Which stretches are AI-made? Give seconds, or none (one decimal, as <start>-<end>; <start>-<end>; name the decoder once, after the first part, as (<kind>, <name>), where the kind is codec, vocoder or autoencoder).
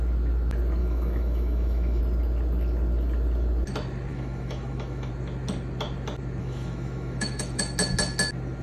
0.8-2.0 (autoencoder, DAC-VAE); 4.1-5.1; 6.4-7.6